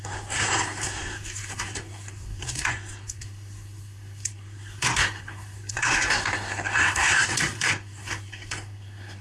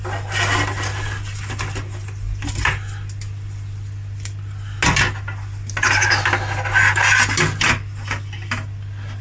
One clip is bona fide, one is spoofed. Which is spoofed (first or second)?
first